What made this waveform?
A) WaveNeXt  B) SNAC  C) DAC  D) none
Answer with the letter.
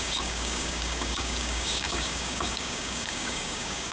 C